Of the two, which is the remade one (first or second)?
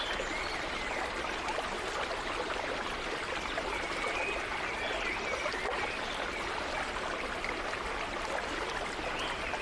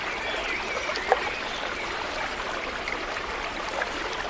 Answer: second